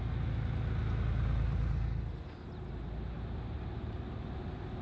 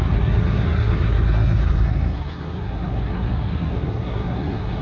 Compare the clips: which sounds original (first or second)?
first